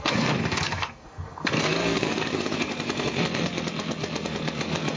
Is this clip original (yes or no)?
no